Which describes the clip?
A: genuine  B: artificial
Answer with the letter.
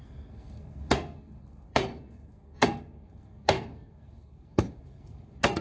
B